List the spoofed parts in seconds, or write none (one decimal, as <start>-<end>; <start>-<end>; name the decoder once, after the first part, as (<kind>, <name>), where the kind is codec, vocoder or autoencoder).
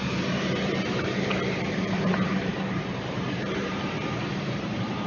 0.0-5.1 (vocoder, BigVGAN v2)